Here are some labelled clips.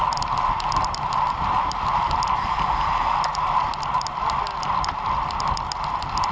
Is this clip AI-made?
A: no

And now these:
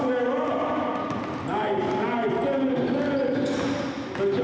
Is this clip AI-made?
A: no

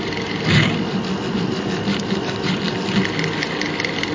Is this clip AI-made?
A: no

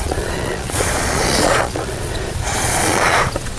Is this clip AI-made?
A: yes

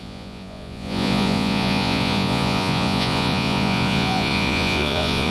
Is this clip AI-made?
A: yes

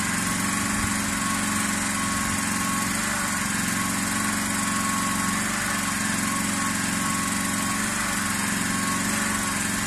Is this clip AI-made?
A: no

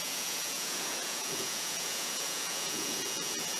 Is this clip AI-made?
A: yes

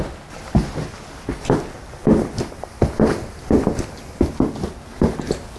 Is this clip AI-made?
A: no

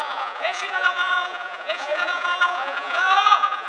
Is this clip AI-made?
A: yes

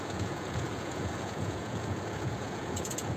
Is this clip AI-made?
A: yes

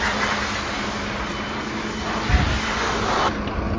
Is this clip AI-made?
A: no